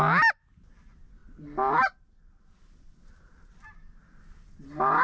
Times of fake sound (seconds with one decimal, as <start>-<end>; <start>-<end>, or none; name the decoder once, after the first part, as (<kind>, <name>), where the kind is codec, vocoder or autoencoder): none